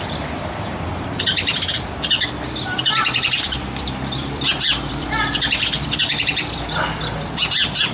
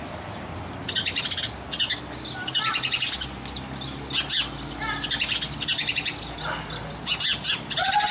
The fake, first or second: first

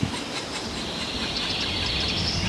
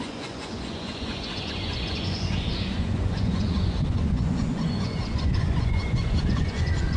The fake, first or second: second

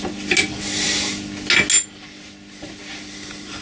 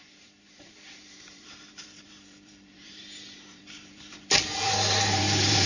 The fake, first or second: second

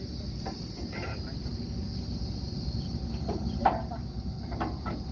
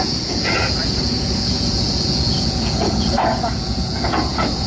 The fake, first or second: second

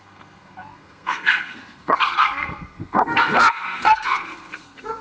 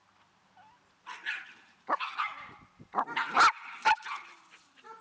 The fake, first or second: first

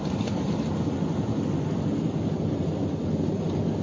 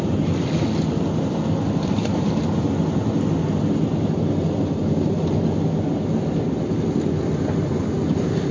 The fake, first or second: first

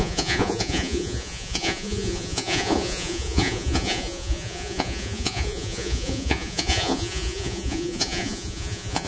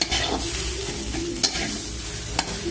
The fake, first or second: first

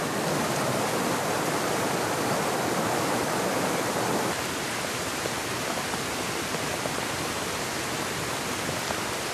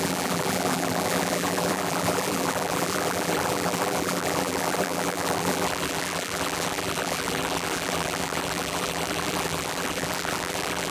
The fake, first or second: second